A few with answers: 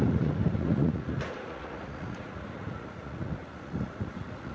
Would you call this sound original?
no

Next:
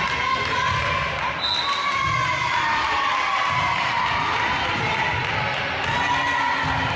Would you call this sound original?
yes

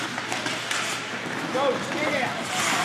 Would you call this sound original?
yes